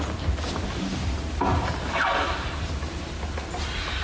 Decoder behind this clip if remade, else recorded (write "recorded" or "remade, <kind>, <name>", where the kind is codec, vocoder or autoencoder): recorded